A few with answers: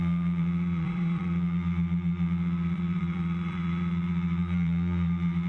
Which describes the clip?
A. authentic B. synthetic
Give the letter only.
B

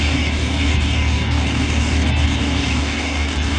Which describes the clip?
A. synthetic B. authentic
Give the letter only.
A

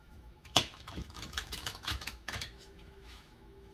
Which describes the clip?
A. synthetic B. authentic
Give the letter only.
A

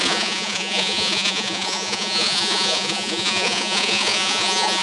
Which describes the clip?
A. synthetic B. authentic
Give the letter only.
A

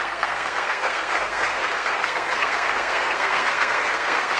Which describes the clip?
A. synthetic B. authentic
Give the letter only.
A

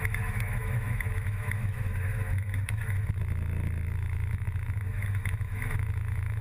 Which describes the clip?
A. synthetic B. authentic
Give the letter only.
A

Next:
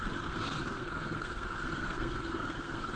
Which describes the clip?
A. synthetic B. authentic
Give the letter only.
A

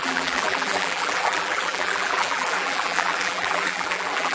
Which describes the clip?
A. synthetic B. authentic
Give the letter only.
A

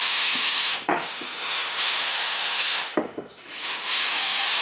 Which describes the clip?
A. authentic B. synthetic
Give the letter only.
B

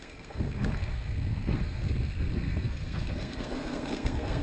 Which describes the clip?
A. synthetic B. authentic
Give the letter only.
A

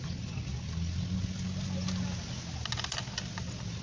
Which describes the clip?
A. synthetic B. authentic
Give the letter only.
B